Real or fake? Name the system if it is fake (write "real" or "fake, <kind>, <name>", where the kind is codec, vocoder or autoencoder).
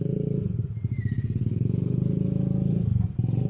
real